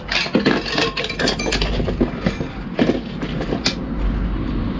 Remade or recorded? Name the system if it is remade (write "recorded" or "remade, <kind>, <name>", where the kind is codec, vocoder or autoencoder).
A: recorded